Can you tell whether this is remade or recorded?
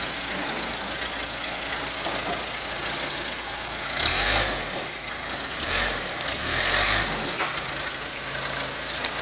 recorded